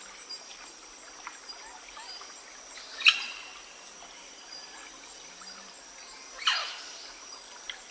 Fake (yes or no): no